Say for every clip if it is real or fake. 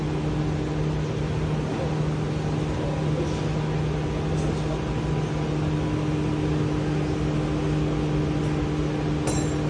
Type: real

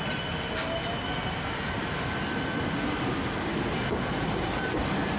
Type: real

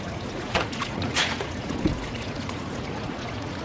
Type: fake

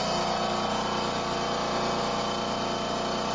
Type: real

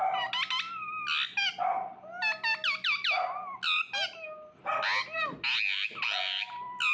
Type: real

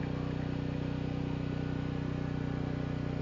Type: real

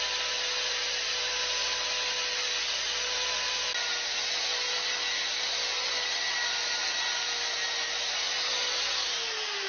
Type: real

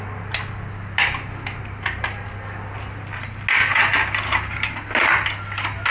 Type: real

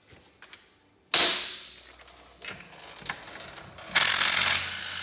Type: real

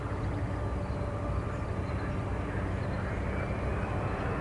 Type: real